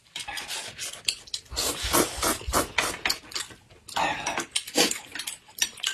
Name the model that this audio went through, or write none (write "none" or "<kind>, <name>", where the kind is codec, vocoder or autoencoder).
none